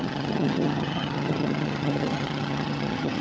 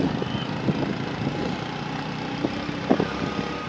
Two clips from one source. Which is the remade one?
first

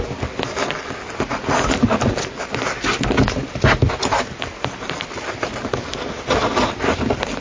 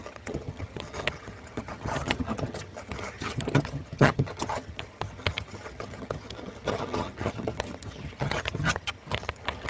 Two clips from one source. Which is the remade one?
second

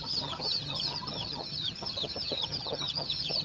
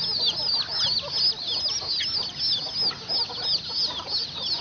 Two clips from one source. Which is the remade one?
first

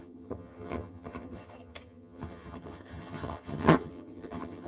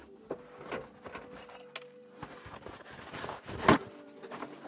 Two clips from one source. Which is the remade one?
first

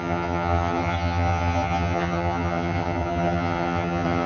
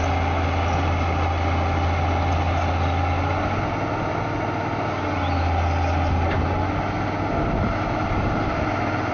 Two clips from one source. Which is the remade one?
first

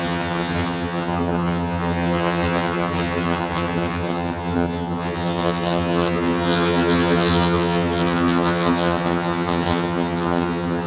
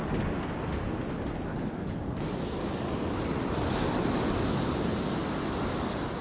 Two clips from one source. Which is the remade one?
first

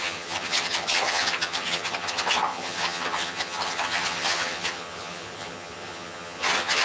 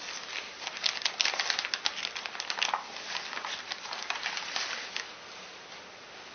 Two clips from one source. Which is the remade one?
first